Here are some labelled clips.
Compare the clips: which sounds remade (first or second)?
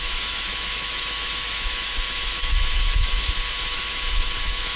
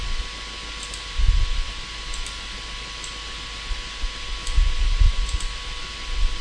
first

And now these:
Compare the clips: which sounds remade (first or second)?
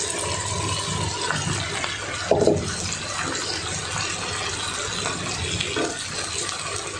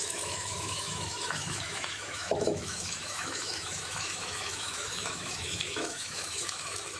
second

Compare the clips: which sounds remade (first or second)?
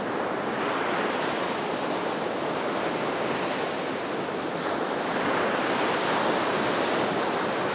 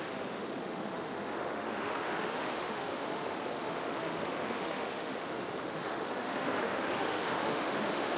second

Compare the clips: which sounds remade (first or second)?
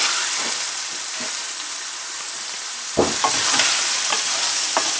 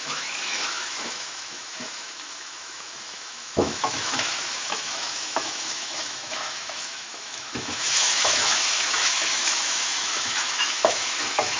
second